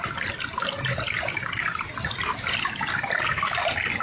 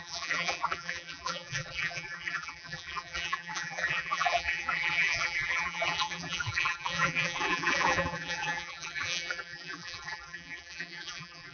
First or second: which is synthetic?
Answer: second